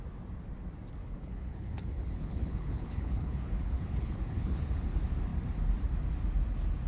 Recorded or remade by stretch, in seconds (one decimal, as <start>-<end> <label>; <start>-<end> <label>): 0.0-1.0 recorded; 1.0-4.6 remade; 4.6-6.9 recorded